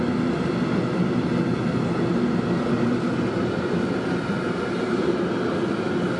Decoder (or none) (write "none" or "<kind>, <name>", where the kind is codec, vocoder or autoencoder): none